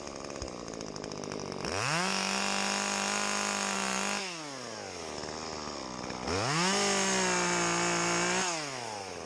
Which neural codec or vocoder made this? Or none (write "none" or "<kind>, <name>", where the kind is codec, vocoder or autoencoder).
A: none